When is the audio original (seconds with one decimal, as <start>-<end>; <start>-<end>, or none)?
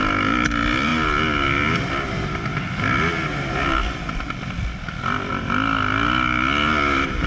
0.0-7.3